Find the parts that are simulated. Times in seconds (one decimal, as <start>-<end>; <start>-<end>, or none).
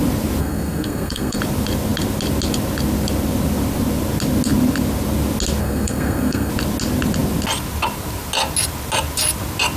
0.4-1.4; 5.6-6.5